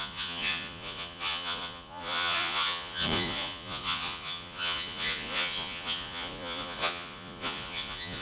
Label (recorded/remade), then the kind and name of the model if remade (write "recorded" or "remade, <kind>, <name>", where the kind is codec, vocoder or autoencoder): remade, vocoder, Vocos